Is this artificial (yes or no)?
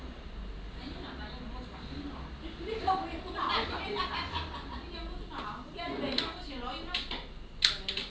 no